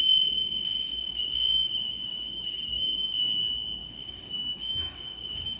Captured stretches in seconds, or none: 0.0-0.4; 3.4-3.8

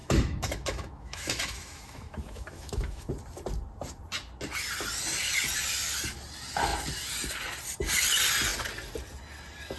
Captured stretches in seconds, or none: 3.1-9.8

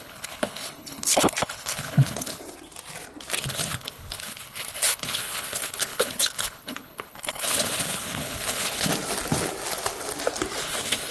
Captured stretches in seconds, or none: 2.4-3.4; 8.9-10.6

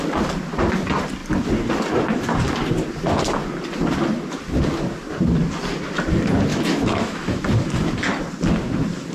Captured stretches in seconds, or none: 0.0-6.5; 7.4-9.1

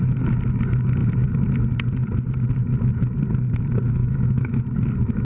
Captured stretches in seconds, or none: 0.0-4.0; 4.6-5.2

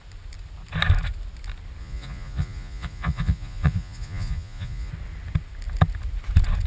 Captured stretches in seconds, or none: 0.0-1.8; 4.9-6.7